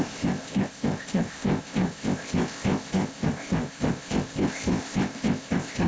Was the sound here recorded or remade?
remade